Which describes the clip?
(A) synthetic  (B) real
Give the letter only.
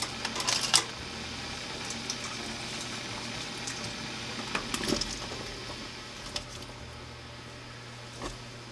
B